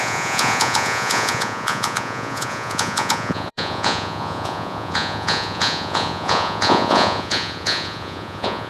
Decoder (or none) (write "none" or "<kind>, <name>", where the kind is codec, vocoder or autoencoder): vocoder, Vocos